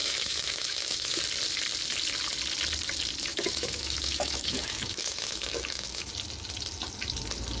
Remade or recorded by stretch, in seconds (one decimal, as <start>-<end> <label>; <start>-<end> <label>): 0.0-1.2 remade; 1.2-3.3 recorded; 3.3-6.1 remade; 6.1-7.6 recorded